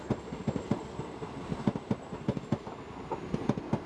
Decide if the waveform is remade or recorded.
recorded